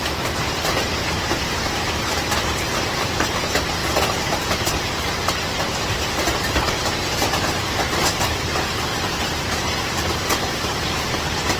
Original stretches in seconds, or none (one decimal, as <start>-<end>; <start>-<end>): 3.8-4.3